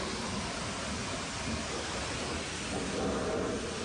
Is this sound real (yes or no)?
yes